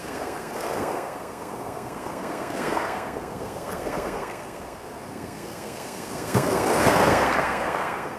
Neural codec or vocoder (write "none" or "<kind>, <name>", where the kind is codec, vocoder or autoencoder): codec, SNAC